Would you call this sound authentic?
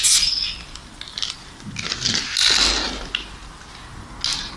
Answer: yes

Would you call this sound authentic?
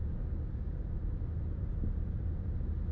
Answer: yes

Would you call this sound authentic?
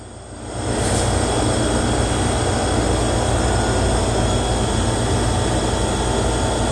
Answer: yes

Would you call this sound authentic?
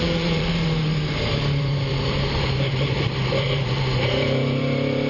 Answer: no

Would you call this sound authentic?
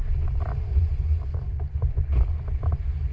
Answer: yes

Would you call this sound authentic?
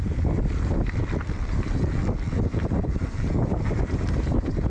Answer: no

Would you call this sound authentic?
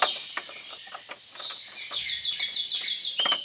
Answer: yes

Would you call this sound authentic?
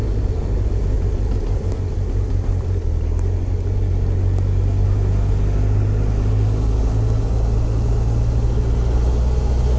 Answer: yes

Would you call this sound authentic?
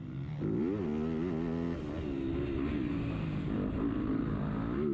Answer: yes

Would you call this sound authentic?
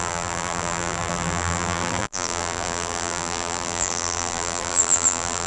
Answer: no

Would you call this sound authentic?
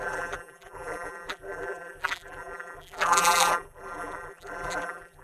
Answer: no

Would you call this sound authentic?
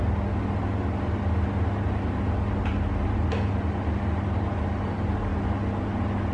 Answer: yes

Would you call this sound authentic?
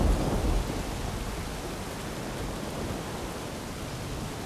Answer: yes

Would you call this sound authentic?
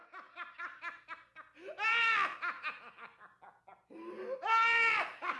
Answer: yes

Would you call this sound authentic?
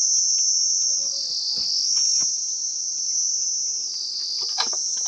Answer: yes